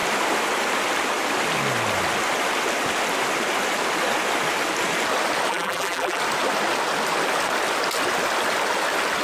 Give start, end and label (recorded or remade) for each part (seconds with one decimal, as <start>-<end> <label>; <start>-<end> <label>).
0.0-5.5 recorded; 5.5-6.2 remade; 6.2-9.2 recorded